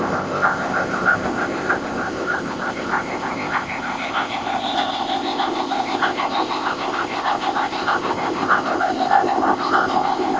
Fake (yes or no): yes